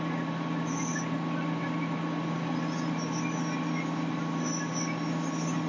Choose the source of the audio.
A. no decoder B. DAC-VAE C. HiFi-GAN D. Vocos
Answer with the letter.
A